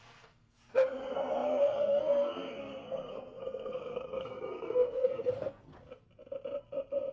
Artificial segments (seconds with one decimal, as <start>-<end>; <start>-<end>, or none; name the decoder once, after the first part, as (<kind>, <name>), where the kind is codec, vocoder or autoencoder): 0.0-5.7 (codec, SNAC)